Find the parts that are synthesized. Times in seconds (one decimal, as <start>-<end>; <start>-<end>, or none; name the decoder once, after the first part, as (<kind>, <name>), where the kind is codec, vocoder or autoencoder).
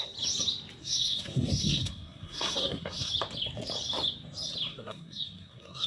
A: 0.8-3.1 (codec, SNAC); 4.7-5.9